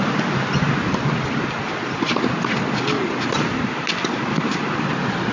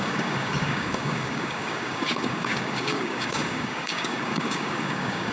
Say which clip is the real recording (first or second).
first